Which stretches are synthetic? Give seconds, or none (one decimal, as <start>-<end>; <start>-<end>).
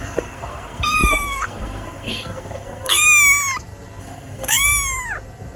0.0-3.0; 4.0-4.7